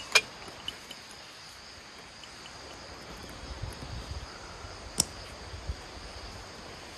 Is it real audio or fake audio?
real